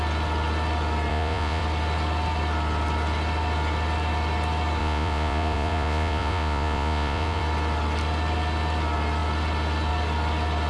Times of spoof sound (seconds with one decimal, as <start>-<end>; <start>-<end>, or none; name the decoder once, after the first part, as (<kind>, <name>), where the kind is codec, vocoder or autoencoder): 1.1-1.6 (vocoder, Vocos); 4.8-7.4